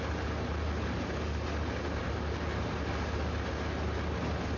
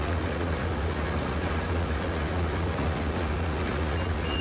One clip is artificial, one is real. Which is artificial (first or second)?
second